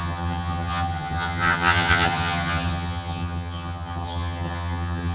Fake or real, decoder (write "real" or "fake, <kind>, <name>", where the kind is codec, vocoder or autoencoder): fake, vocoder, HiFi-GAN